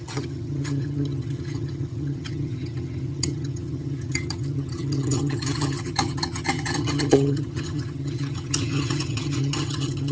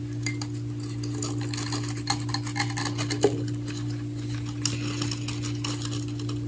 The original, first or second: second